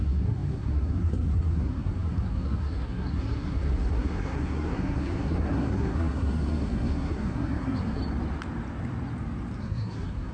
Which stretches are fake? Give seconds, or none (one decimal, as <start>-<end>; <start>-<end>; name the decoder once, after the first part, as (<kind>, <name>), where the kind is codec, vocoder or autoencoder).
0.0-8.0 (codec, SNAC); 9.6-10.3